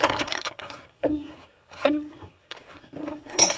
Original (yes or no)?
no